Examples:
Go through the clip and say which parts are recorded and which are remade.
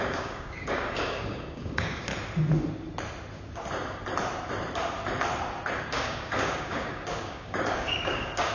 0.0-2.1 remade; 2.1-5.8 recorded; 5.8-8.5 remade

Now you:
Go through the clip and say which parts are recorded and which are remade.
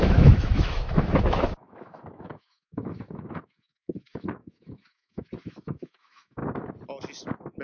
0.0-6.4 remade; 6.4-7.6 recorded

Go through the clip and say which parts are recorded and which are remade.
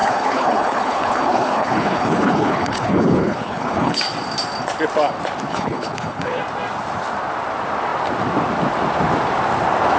0.0-4.0 remade; 4.0-5.5 recorded; 5.5-6.4 remade; 6.4-10.0 recorded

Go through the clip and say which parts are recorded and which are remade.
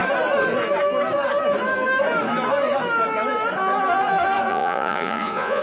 0.0-4.5 recorded; 4.5-5.6 remade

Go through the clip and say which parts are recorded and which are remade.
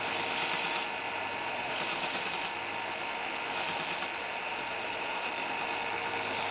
0.0-1.4 recorded; 1.4-2.3 remade; 2.3-4.2 recorded; 4.2-5.3 remade; 5.3-6.5 recorded